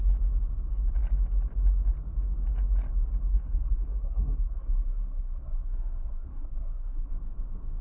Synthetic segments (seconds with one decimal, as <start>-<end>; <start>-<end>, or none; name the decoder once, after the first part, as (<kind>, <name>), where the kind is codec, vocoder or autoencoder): 3.3-7.1 (codec, SNAC)